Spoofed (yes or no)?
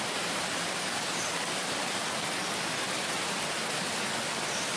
yes